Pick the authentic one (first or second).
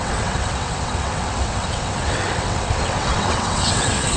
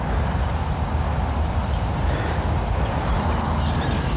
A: second